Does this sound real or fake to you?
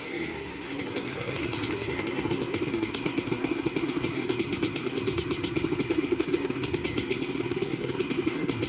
fake